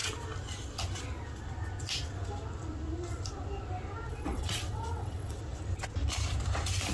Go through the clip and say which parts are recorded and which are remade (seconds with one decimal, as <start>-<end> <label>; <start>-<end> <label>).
0.0-4.1 recorded; 4.1-5.4 remade; 5.4-6.9 recorded